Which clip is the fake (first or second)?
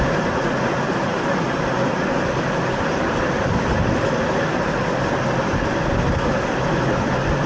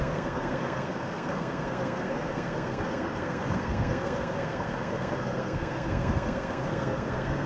second